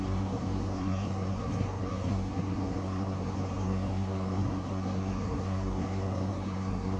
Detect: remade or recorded remade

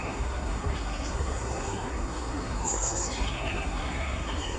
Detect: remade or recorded remade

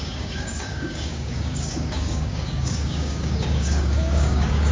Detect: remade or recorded remade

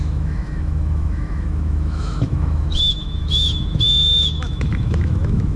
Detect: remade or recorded remade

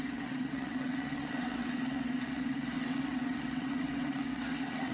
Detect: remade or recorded remade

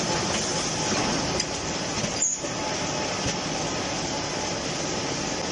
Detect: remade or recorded recorded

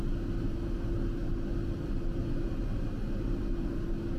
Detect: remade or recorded recorded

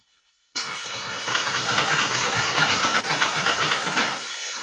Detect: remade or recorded remade